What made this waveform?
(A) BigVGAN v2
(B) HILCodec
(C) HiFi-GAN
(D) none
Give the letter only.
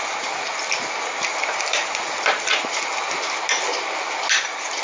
D